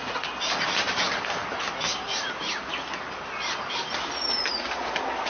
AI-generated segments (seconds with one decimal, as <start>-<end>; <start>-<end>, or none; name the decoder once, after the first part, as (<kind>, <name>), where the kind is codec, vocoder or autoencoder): none